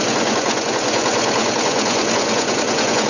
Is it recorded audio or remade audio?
remade